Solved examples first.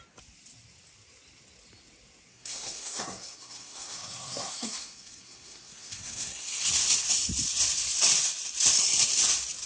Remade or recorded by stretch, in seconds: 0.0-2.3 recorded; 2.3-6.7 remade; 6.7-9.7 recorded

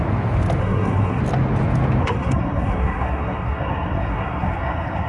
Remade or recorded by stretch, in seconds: 0.0-0.6 recorded; 0.6-1.2 remade; 1.2-2.0 recorded; 2.0-5.1 remade

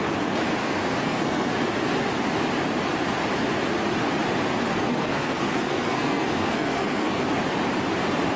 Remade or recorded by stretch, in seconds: 0.0-0.6 recorded; 0.6-1.5 remade; 1.5-4.7 recorded; 4.7-7.2 remade; 7.2-8.4 recorded

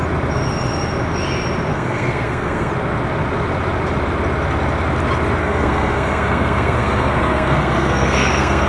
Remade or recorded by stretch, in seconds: 0.0-1.7 recorded; 1.7-2.7 remade; 2.7-5.4 recorded; 5.4-8.7 remade

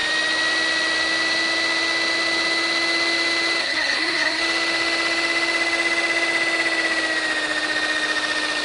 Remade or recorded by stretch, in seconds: 0.0-3.6 recorded; 3.6-4.4 remade; 4.4-8.6 recorded

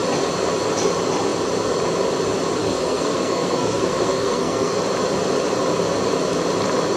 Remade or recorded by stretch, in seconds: 0.0-2.6 recorded; 2.6-4.8 remade; 4.8-7.0 recorded

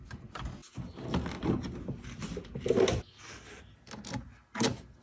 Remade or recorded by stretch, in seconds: 0.0-5.0 recorded

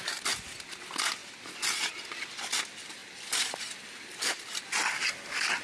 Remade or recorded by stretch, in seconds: 0.0-5.6 recorded